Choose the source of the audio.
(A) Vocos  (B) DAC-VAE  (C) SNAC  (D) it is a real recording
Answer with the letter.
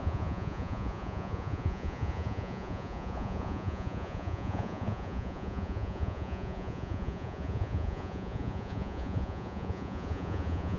A